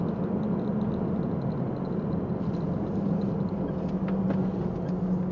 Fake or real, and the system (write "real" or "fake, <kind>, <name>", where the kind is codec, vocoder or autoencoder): real